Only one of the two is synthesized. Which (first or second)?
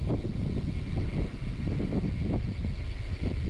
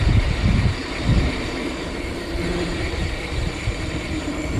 second